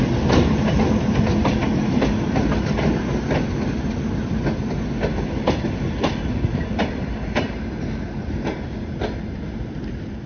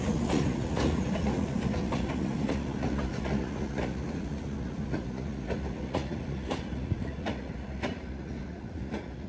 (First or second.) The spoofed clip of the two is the second